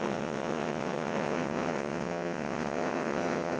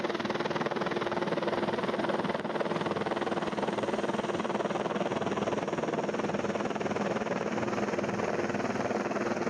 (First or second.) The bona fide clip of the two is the second